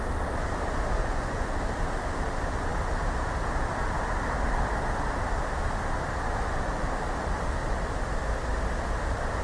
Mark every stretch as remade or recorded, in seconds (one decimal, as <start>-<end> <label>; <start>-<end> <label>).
0.0-1.0 recorded; 1.0-1.6 remade; 1.6-9.4 recorded